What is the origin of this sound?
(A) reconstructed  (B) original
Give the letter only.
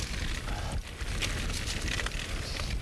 B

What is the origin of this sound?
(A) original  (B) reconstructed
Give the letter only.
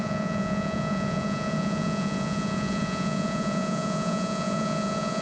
B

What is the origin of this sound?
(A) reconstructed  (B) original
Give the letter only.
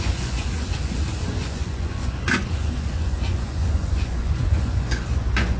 A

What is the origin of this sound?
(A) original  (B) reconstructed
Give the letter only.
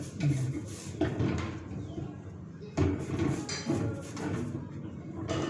A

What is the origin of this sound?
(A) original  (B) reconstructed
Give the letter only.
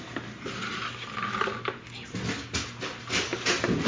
A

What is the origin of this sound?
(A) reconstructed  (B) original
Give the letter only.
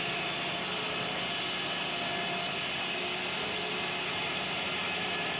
B